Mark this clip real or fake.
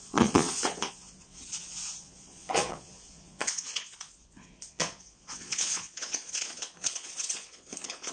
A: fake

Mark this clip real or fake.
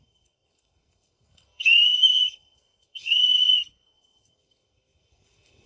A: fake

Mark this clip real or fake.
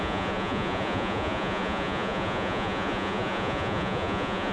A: fake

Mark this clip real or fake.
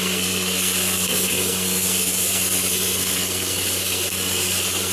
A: fake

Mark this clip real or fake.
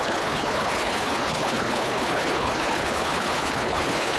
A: fake